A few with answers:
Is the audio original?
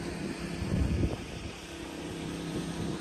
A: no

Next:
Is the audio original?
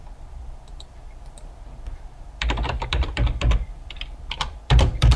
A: no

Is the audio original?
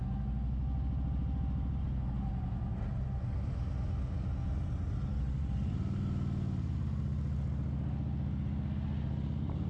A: yes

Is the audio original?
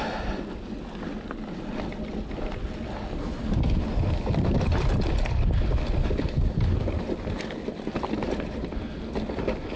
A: yes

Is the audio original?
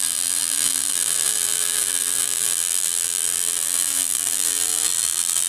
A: no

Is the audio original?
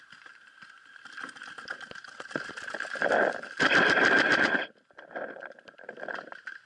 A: yes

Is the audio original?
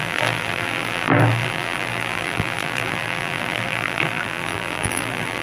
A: no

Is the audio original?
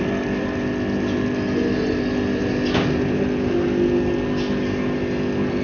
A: yes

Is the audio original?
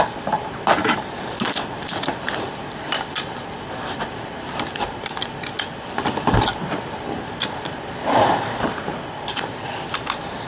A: no